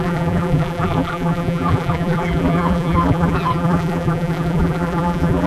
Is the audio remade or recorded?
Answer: remade